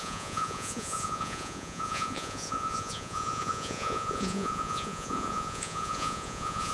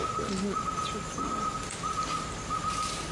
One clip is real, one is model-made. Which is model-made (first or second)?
first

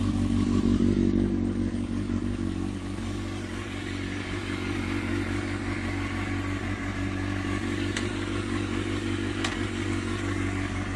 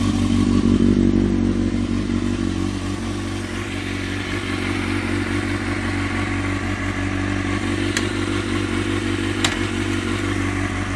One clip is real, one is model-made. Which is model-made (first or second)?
first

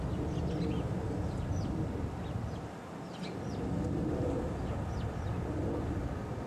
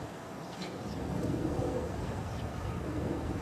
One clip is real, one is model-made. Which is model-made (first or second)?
second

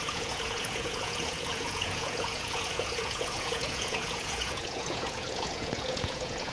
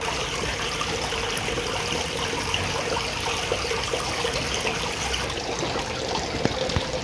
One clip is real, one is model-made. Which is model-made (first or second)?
first